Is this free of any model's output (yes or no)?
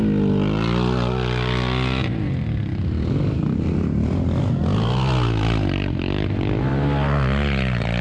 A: yes